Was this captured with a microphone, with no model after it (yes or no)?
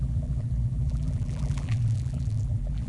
no